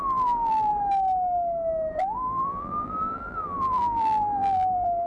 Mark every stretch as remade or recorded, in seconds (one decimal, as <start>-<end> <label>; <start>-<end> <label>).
0.0-0.7 remade; 0.7-2.0 recorded; 2.0-5.1 remade